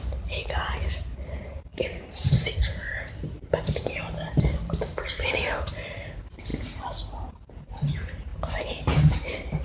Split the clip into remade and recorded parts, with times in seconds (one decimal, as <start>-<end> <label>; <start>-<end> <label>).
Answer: 0.0-1.7 recorded; 1.7-5.7 remade; 5.7-8.3 recorded; 8.3-9.6 remade